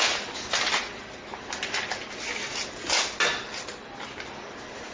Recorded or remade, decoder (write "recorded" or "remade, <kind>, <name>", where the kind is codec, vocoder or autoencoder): recorded